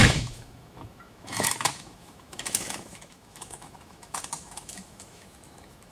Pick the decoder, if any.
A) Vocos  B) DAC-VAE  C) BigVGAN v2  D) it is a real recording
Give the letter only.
B